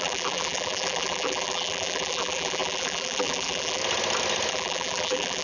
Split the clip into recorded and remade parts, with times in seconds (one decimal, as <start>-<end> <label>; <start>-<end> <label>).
0.0-3.8 remade; 3.8-4.5 recorded; 4.5-5.4 remade